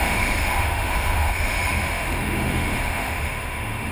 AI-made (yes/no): yes